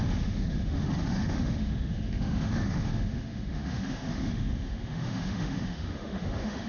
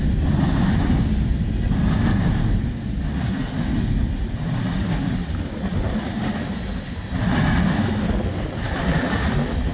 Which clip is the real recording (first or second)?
second